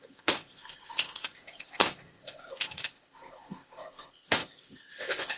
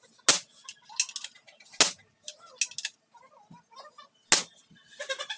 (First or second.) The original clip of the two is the second